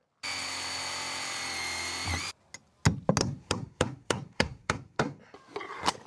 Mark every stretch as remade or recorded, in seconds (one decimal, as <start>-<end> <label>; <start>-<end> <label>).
0.0-3.2 recorded; 3.2-5.2 remade; 5.2-6.1 recorded